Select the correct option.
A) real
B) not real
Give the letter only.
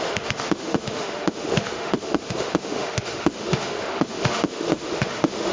B